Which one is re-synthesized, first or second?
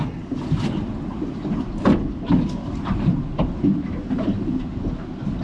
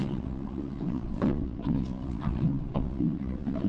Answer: second